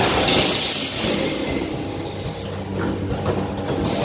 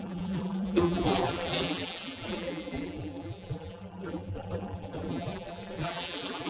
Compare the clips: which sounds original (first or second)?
first